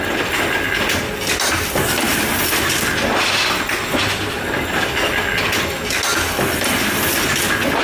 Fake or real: real